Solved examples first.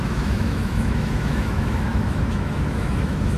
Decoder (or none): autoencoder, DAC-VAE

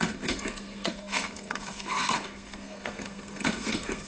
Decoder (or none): codec, SNAC